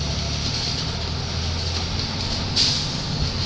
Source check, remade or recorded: recorded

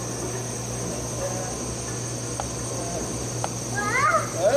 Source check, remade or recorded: recorded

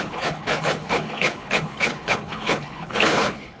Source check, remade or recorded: remade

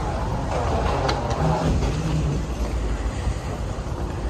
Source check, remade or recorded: recorded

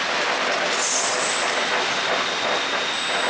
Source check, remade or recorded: recorded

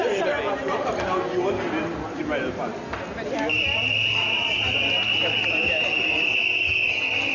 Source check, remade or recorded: recorded